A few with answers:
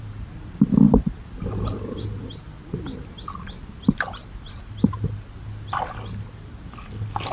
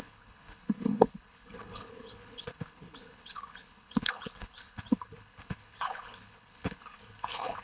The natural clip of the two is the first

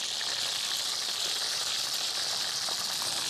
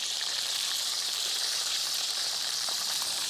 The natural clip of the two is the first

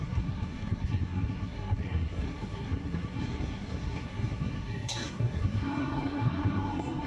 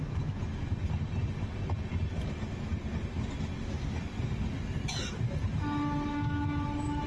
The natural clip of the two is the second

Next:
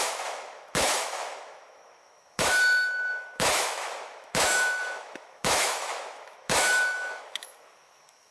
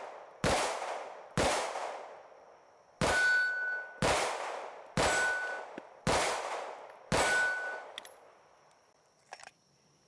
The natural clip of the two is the second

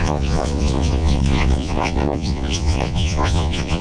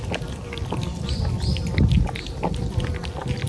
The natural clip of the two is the second